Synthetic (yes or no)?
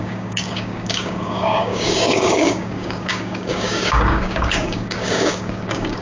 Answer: yes